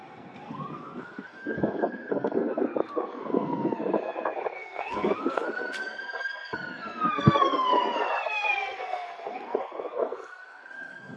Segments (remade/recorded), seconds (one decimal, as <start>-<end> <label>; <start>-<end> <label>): 0.0-11.2 remade